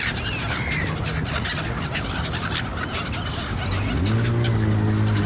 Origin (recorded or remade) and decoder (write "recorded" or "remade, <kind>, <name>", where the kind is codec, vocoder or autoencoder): recorded